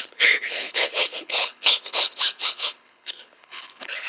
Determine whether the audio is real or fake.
fake